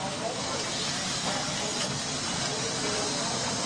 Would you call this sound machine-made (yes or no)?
no